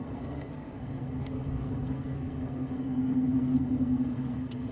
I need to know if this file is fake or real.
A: fake